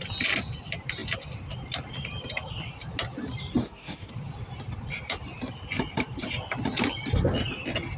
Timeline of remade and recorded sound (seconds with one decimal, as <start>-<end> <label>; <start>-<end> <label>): 0.0-3.6 recorded; 3.6-4.1 remade; 4.1-8.0 recorded